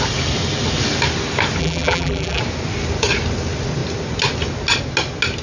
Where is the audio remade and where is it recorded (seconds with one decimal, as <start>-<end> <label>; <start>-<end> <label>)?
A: 0.0-1.6 recorded; 1.6-2.4 remade; 2.4-5.4 recorded